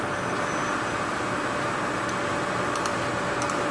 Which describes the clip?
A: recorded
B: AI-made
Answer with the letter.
A